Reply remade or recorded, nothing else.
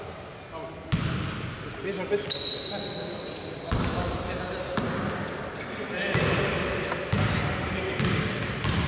recorded